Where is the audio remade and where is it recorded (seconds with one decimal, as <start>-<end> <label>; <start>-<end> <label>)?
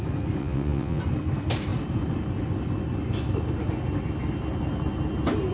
0.0-0.4 recorded; 0.4-1.0 remade; 1.0-5.5 recorded